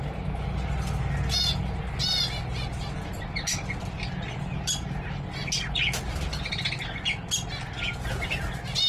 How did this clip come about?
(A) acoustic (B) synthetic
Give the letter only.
A